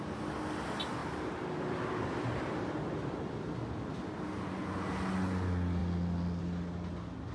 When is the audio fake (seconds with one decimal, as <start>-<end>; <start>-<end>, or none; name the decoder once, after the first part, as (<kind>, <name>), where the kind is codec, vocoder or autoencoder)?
none